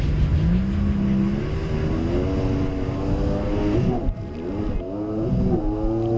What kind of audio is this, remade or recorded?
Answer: recorded